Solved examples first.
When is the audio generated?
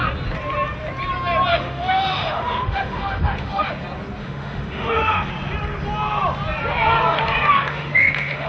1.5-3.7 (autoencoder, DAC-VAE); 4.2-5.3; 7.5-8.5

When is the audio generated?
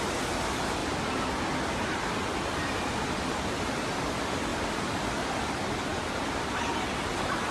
none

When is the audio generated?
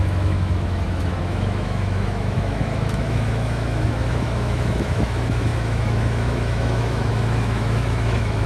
0.0-8.5 (autoencoder, DAC-VAE)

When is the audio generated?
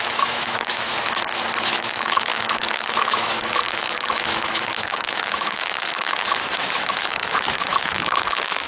0.0-0.9 (autoencoder, DAC-VAE); 1.6-8.7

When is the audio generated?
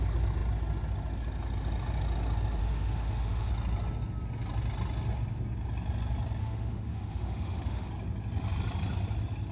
2.6-3.5 (autoencoder, DAC-VAE); 6.4-7.9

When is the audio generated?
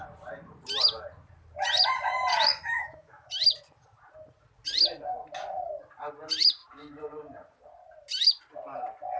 2.3-3.3 (autoencoder, DAC-VAE)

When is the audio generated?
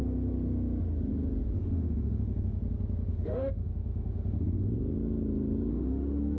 1.6-2.6 (autoencoder, DAC-VAE); 3.1-4.7; 5.7-6.4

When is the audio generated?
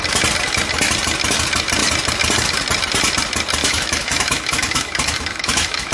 3.6-5.9 (autoencoder, DAC-VAE)